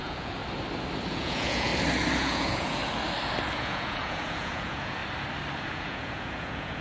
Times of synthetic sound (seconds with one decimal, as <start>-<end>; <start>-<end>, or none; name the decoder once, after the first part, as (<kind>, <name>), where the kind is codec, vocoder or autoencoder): 0.0-0.4 (vocoder, Vocos); 1.1-1.7; 2.2-2.8; 3.6-5.0; 5.6-6.8